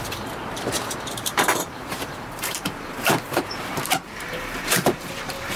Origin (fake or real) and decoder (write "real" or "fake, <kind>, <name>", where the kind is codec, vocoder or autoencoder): fake, vocoder, BigVGAN v2